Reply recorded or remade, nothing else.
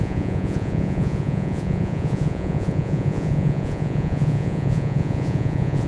remade